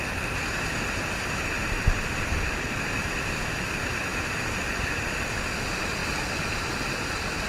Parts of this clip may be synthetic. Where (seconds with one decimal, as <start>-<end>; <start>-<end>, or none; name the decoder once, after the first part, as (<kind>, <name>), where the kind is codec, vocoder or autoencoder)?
4.1-5.0 (vocoder, BigVGAN v2)